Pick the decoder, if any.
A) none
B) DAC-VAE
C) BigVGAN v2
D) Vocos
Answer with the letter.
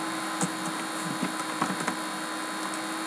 A